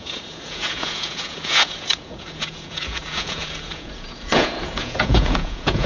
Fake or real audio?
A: fake